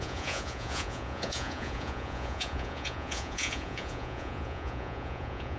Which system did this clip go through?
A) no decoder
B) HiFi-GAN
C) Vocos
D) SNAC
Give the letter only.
C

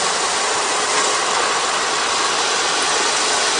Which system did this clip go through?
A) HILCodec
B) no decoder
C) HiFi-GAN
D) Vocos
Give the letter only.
B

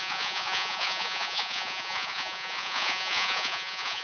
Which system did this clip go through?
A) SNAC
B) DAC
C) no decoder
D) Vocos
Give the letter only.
D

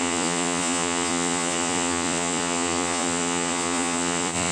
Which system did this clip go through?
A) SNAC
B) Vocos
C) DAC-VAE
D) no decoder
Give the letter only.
B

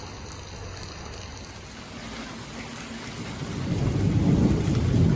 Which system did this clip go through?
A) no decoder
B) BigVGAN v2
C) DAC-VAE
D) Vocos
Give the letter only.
A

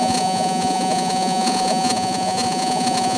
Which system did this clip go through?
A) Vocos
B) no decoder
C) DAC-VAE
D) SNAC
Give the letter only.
A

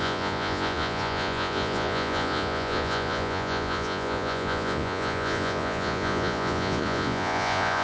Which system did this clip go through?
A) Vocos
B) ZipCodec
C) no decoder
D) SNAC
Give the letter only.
A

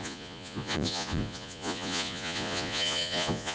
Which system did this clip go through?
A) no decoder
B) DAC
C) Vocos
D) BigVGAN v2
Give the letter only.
C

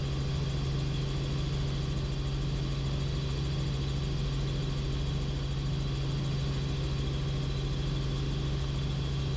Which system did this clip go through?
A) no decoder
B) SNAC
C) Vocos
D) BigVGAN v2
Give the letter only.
A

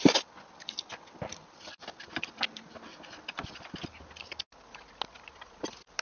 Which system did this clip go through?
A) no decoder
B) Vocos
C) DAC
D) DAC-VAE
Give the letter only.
A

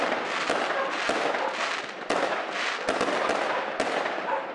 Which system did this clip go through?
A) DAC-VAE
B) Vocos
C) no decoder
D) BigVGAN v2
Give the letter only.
C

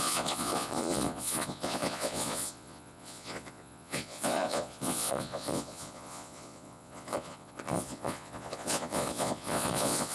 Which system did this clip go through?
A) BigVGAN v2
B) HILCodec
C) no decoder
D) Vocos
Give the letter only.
D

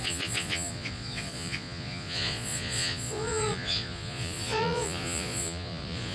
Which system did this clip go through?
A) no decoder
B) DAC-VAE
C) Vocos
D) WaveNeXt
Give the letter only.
C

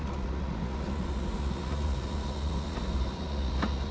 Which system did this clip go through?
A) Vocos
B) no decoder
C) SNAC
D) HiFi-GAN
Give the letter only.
A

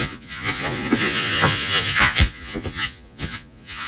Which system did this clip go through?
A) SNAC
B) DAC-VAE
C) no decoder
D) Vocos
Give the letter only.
D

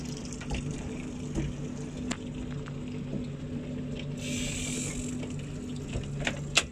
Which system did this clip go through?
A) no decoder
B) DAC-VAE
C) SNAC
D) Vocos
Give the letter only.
A